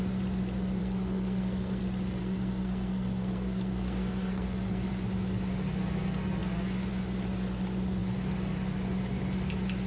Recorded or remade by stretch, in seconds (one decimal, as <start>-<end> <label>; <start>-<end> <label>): 0.0-0.8 recorded; 0.8-1.8 remade; 1.8-2.2 recorded; 2.2-4.9 remade; 4.9-9.9 recorded